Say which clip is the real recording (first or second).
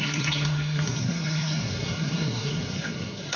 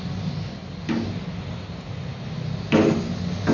second